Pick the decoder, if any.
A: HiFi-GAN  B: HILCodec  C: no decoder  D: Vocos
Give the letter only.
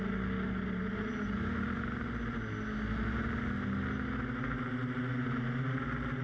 C